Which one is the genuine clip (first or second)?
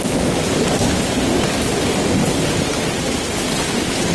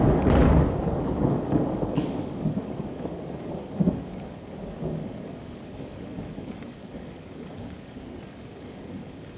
first